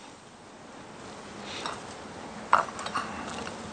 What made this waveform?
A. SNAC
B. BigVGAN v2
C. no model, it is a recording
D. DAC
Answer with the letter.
C